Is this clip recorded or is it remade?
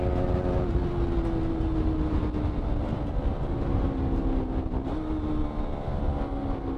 recorded